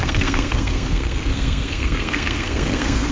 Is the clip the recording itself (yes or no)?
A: no